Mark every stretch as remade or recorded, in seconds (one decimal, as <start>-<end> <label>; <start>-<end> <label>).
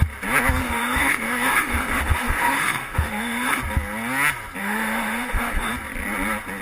0.0-0.6 recorded; 0.6-3.6 remade; 3.6-4.6 recorded; 4.6-5.7 remade; 5.7-6.6 recorded